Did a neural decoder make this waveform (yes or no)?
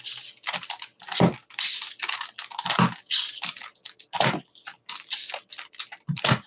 no